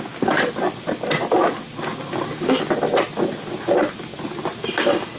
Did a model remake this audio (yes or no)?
no